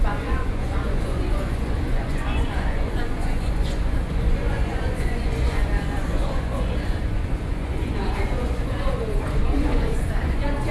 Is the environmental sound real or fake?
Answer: fake